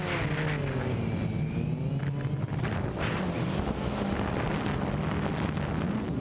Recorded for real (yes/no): yes